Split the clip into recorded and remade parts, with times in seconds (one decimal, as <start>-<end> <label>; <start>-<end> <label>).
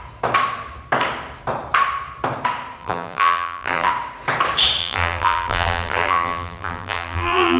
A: 0.0-2.8 recorded; 2.8-3.9 remade; 3.9-4.8 recorded; 4.8-7.6 remade